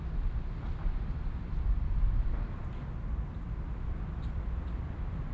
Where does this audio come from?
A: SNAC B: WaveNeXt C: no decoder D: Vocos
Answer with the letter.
C